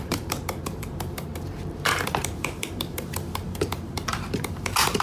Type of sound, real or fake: fake